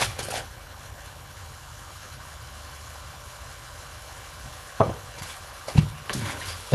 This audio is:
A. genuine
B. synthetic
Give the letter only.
B